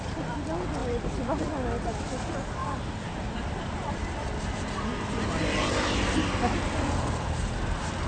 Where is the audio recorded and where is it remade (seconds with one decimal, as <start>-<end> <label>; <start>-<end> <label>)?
0.0-0.8 recorded; 0.8-1.4 remade; 1.4-2.6 recorded; 2.6-3.9 remade; 3.9-8.1 recorded